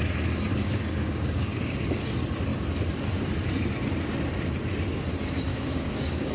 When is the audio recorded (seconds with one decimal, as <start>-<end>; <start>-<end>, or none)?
0.0-0.6; 2.0-5.5